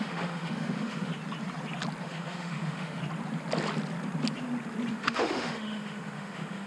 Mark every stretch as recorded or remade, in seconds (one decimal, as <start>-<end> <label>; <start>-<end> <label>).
0.0-1.1 remade; 1.1-2.0 recorded; 2.0-3.0 remade; 3.0-4.9 recorded; 4.9-6.7 remade